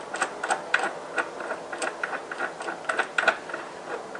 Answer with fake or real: real